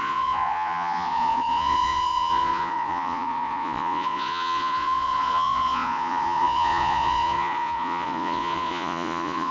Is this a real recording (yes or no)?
no